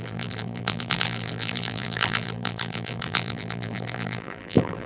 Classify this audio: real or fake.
fake